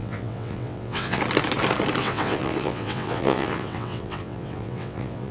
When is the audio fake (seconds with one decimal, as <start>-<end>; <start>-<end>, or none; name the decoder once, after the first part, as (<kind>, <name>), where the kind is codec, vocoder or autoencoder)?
0.0-1.2 (vocoder, WaveNeXt); 2.0-5.3